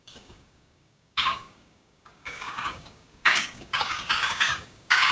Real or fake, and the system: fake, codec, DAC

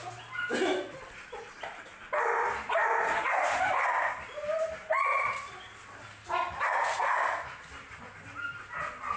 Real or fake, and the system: real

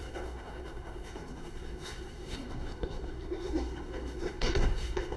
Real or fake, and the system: fake, codec, SNAC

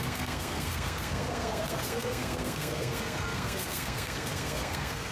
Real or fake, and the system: fake, codec, SNAC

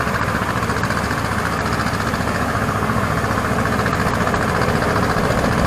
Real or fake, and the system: real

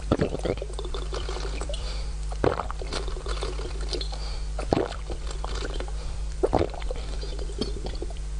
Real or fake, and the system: fake, vocoder, BigVGAN v2